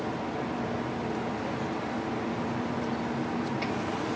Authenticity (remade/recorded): recorded